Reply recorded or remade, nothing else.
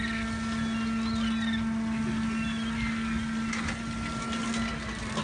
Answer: recorded